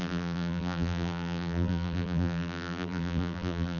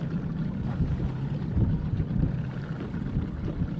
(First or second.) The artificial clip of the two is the first